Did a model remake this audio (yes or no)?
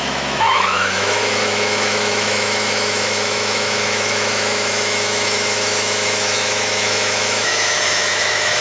yes